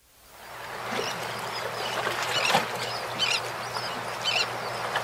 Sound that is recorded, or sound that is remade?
recorded